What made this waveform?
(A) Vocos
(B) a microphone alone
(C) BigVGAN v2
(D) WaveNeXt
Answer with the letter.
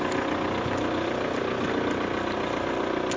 B